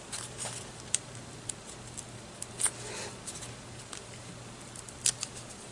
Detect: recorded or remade recorded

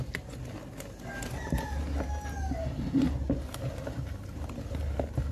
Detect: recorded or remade recorded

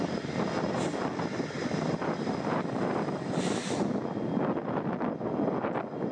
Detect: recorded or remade recorded